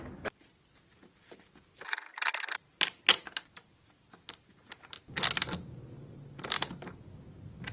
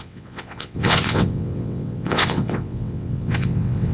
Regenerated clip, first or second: second